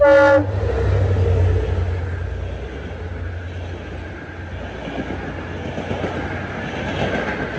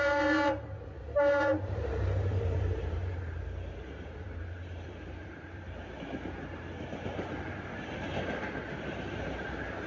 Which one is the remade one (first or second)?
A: second